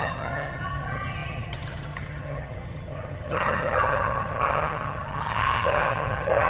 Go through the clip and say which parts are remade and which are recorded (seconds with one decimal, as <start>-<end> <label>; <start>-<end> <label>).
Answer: 0.0-6.5 remade